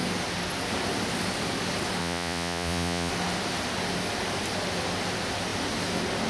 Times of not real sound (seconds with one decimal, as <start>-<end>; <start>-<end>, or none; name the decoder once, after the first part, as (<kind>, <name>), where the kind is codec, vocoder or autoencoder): 2.0-3.1 (vocoder, Vocos)